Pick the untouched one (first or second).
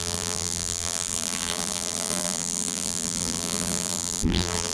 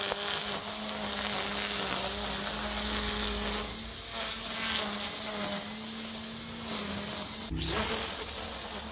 second